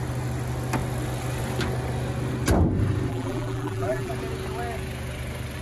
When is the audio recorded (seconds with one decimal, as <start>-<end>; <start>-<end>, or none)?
0.0-3.1; 4.1-5.6